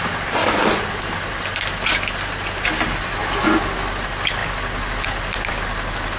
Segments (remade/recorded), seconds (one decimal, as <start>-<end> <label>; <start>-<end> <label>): 0.0-6.2 recorded